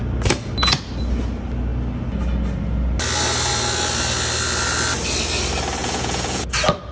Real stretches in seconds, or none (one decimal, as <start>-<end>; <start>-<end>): 0.0-5.8; 6.4-6.9